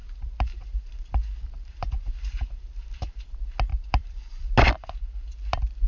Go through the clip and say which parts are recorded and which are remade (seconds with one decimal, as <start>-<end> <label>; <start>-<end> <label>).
0.0-3.3 remade; 3.3-3.7 recorded; 3.7-4.3 remade; 4.3-5.9 recorded